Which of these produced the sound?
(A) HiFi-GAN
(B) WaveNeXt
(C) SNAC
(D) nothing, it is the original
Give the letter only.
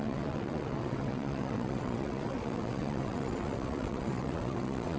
B